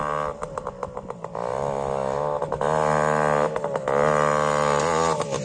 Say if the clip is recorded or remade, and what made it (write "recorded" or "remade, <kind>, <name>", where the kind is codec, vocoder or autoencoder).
recorded